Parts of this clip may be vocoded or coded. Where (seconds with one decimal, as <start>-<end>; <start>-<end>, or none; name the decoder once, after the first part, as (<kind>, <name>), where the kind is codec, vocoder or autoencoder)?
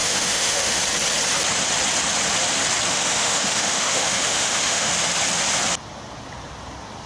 0.0-0.8 (autoencoder, DAC-VAE); 2.9-4.9